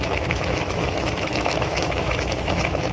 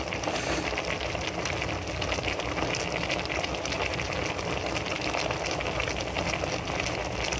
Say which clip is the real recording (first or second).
second